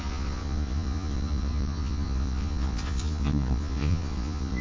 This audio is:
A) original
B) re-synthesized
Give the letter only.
B